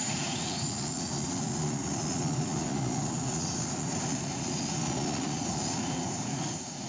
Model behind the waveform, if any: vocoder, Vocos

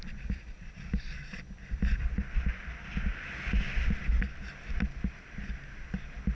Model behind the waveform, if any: none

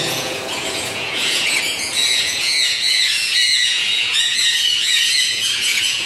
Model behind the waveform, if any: vocoder, Vocos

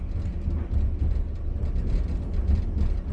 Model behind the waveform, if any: none